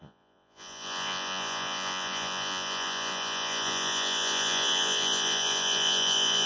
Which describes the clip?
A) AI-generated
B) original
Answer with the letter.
A